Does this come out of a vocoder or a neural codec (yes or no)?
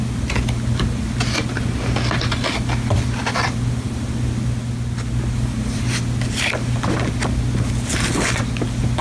no